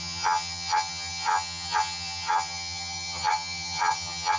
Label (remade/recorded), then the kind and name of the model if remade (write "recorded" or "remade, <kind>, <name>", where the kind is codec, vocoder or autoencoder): remade, vocoder, HiFi-GAN